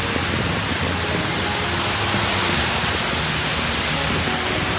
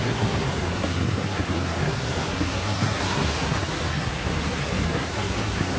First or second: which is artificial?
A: second